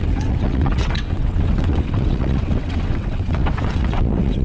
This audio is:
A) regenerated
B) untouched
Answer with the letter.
A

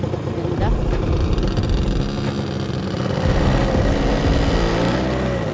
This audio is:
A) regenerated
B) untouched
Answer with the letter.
B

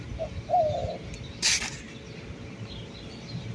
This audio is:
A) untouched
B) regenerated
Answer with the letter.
A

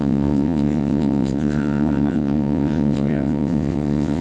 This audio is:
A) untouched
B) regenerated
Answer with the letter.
B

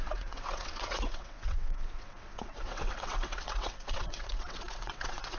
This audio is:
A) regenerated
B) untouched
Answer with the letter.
A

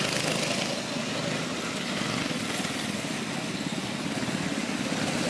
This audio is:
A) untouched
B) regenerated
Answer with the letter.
A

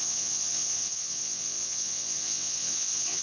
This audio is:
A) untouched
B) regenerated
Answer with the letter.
B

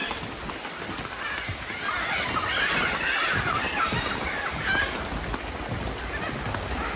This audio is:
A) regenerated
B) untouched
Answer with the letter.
B